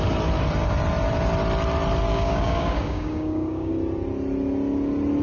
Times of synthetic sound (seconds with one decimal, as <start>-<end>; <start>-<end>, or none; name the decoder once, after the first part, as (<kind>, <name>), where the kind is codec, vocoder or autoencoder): 2.1-3.7 (codec, DAC)